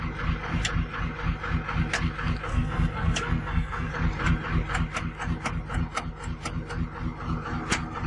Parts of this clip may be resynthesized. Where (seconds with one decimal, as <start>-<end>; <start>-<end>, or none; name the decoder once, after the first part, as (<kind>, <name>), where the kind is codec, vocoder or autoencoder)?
2.5-3.9 (codec, SNAC)